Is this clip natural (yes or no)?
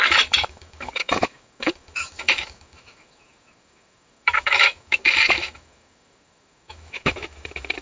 no